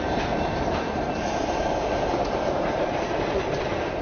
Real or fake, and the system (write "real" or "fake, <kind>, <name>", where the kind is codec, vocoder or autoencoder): fake, vocoder, BigVGAN v2